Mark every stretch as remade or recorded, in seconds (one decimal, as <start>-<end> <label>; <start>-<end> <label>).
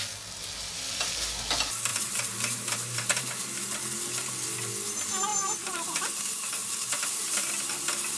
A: 0.0-1.9 recorded; 1.9-3.3 remade; 3.3-5.3 recorded; 5.3-6.1 remade; 6.1-6.6 recorded; 6.6-7.5 remade; 7.5-8.2 recorded